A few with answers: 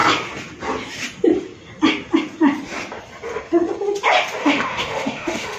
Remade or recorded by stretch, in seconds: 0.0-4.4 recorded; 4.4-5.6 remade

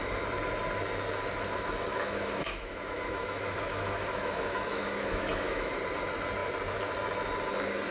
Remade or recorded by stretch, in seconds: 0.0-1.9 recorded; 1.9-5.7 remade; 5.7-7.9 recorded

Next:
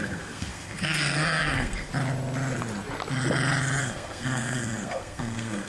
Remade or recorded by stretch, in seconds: 0.0-1.9 remade; 1.9-3.8 recorded; 3.8-5.7 remade